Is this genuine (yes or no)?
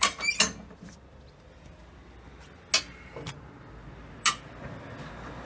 yes